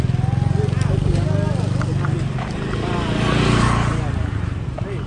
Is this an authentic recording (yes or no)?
yes